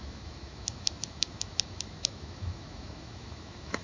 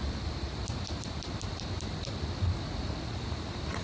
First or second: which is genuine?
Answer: second